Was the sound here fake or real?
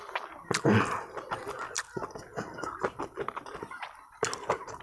real